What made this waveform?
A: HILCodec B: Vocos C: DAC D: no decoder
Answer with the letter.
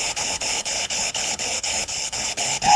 A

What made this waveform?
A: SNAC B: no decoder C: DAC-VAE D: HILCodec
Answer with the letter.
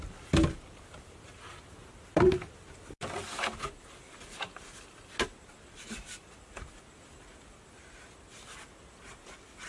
B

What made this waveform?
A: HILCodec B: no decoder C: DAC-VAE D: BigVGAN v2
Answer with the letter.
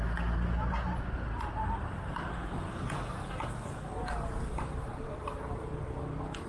B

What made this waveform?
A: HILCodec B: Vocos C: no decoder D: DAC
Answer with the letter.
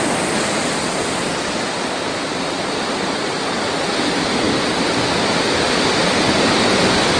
C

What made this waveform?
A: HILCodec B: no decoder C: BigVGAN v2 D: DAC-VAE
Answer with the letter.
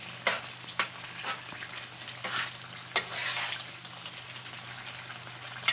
B